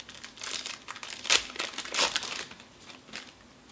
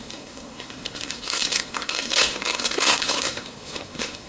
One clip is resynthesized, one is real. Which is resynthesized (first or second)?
second